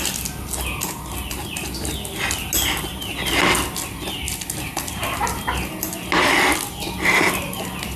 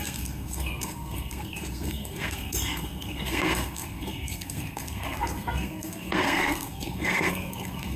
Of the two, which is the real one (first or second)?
first